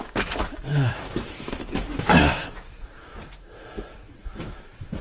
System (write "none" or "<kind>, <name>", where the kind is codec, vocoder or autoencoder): autoencoder, DAC-VAE